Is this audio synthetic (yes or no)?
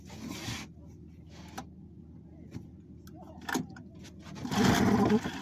no